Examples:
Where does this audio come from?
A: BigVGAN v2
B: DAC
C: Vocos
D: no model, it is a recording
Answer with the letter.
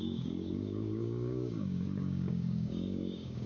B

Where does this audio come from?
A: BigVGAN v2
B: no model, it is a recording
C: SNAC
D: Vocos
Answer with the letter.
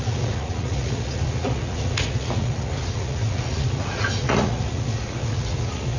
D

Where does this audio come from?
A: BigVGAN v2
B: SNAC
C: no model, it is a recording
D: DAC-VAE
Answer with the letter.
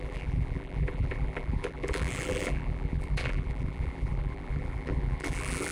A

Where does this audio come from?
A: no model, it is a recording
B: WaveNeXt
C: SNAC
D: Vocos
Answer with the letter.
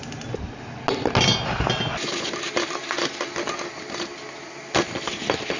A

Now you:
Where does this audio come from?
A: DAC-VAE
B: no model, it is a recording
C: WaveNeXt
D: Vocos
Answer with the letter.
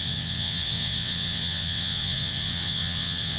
C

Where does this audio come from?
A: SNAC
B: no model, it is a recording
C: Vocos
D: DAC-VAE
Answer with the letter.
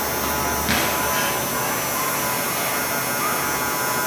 B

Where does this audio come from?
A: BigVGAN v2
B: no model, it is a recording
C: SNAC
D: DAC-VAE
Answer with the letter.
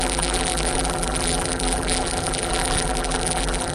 A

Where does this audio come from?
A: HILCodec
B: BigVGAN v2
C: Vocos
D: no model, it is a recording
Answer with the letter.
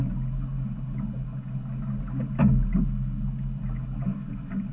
D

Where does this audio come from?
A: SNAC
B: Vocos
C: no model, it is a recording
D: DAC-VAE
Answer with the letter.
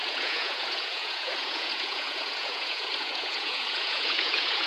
B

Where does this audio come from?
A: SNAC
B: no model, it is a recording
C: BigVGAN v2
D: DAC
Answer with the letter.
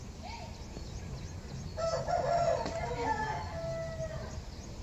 B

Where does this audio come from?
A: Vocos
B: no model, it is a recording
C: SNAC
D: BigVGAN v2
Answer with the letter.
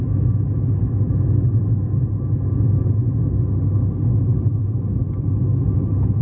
B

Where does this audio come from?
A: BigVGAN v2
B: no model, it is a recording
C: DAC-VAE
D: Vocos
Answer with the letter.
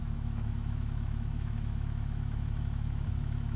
C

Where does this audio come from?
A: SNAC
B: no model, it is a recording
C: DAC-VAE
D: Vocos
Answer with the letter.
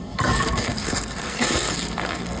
A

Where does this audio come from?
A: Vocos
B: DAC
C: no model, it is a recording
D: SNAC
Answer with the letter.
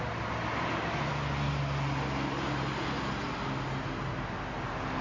C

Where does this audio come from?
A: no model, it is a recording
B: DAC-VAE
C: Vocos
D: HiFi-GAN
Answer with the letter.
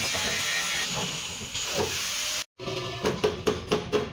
A